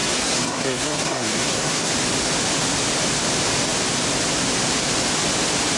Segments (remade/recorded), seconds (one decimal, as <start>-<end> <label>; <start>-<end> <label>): 0.0-1.9 remade; 1.9-5.8 recorded